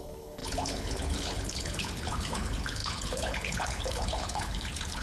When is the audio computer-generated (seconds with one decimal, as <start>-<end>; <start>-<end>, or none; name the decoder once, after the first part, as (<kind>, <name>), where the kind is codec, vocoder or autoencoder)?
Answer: 0.0-5.0 (codec, HILCodec)